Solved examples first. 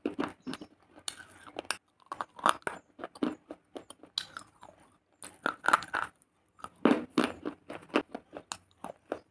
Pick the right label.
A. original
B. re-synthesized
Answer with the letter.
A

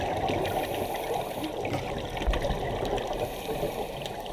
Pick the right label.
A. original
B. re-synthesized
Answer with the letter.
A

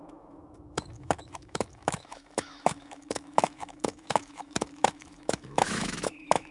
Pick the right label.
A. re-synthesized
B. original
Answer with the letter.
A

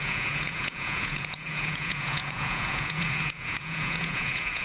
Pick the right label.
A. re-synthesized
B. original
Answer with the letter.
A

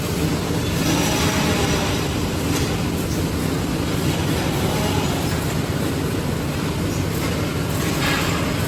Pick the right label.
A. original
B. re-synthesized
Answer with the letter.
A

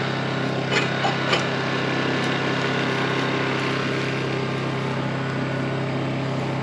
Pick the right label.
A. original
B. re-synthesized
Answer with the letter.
A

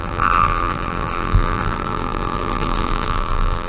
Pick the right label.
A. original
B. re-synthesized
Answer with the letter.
B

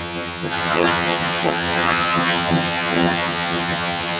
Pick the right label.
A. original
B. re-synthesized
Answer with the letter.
B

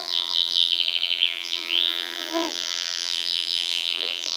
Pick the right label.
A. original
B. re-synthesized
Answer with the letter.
B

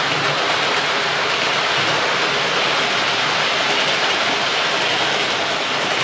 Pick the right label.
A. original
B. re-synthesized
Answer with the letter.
A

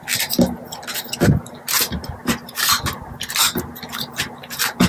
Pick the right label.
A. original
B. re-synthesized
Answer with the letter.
A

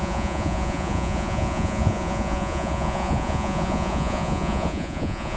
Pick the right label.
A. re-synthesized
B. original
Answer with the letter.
A